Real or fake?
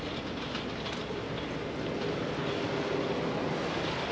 real